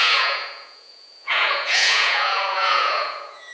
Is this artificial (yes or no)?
yes